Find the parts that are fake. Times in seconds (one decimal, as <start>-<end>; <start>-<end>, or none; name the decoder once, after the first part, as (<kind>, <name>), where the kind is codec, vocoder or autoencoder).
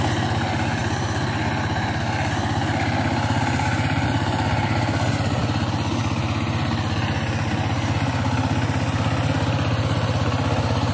none